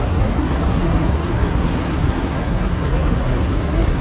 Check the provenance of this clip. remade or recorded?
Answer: remade